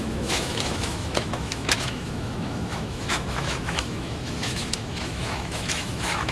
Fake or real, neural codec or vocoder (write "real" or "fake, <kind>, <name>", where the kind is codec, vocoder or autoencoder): fake, autoencoder, DAC-VAE